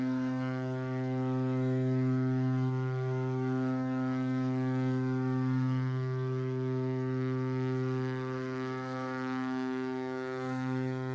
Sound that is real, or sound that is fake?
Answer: fake